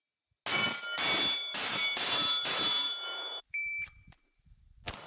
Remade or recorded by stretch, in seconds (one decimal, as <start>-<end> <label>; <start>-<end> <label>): 0.0-1.5 recorded; 1.5-4.6 remade; 4.6-5.1 recorded